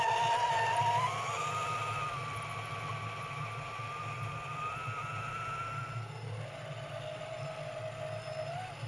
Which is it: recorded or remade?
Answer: recorded